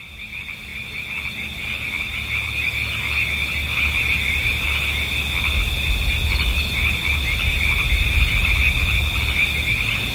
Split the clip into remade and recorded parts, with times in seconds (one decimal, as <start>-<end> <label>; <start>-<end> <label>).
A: 0.0-10.1 recorded

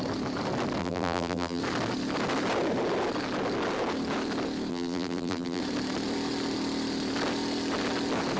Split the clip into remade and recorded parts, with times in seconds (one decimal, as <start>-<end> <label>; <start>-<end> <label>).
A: 0.0-0.8 recorded; 0.8-1.6 remade; 1.6-4.7 recorded; 4.7-5.6 remade; 5.6-8.4 recorded

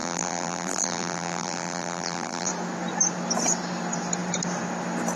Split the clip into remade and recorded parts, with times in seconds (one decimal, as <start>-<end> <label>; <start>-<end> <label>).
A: 0.0-2.5 remade; 2.5-5.2 recorded